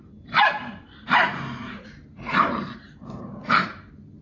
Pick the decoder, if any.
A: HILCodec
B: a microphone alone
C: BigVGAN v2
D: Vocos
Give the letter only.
C